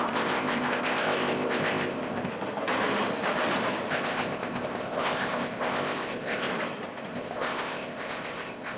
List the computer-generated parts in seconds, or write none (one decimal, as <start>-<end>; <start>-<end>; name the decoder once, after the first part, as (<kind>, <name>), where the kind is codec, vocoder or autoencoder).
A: 0.0-2.3 (codec, ZipCodec); 3.9-6.5; 7.1-8.8